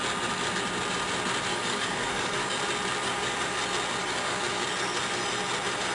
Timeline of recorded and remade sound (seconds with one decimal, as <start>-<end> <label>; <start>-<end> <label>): 0.0-1.5 recorded; 1.5-2.6 remade; 2.6-3.0 recorded; 3.0-3.6 remade; 3.6-4.0 recorded; 4.0-4.6 remade; 4.6-5.9 recorded